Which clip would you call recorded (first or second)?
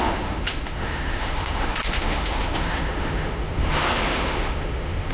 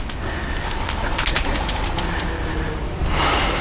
second